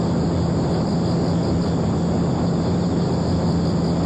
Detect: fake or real real